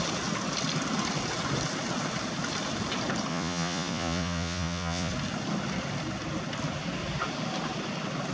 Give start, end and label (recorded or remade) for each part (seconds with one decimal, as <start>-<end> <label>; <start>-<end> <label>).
0.0-3.3 recorded; 3.3-5.1 remade; 5.1-8.3 recorded